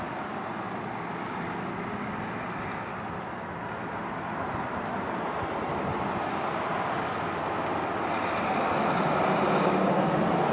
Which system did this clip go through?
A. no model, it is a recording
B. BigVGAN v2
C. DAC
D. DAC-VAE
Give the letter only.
A